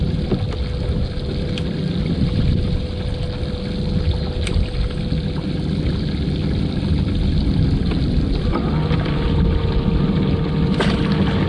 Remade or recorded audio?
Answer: recorded